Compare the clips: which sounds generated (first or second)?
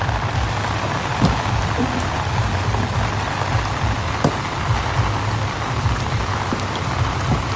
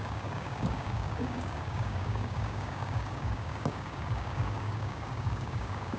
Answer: second